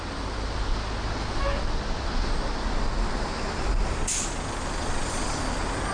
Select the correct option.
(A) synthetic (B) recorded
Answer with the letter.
B